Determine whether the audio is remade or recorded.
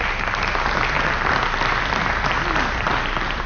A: recorded